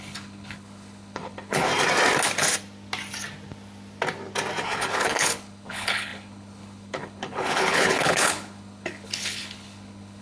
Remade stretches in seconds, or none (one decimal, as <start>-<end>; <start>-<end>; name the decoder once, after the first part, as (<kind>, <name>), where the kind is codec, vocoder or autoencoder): 0.0-1.7 (codec, HILCodec); 4.6-10.2